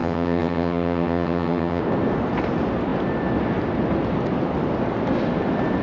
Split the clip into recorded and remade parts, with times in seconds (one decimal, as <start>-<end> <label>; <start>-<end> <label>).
0.0-1.8 remade; 1.8-5.8 recorded